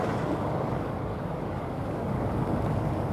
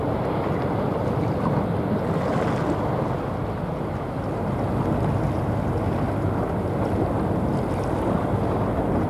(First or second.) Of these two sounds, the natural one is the second